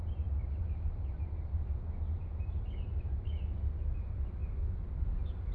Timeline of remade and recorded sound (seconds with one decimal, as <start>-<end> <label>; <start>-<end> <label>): 0.0-5.5 recorded